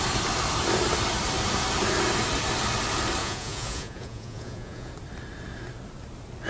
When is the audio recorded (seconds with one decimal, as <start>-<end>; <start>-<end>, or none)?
0.0-3.2; 4.9-6.5